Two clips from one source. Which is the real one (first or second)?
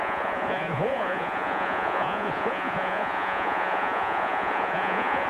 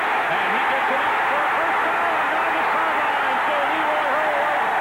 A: second